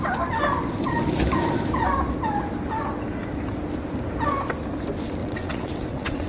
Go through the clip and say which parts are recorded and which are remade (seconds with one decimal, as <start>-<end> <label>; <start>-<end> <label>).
0.0-5.2 recorded; 5.2-6.3 remade